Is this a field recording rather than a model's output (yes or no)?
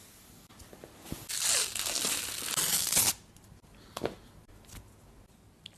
yes